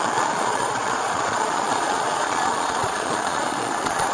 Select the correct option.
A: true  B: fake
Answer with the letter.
B